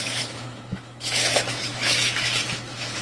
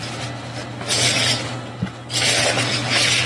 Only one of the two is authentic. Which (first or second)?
second